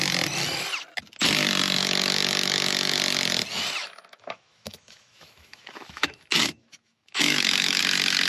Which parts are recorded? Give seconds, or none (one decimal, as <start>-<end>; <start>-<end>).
0.0-1.8; 3.0-3.8; 7.8-8.3

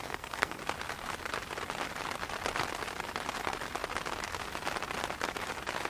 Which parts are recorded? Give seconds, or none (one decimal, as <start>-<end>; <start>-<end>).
0.6-5.9

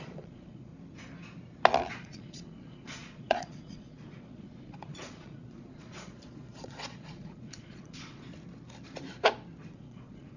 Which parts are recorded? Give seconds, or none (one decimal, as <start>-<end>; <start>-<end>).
0.7-1.9; 8.3-9.7

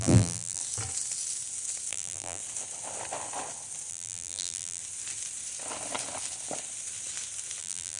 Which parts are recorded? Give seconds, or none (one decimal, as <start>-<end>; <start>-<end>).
0.6-1.9; 2.4-3.9; 4.8-7.6

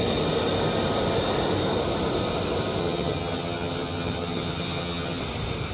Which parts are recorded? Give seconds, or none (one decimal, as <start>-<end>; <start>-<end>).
0.0-2.8; 5.2-5.7